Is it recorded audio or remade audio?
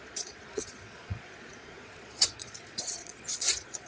remade